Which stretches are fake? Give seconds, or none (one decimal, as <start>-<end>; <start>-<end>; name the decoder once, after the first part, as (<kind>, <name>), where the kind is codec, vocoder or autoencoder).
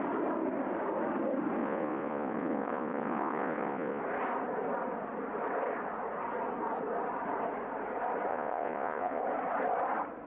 1.6-4.0 (vocoder, Vocos); 8.3-9.2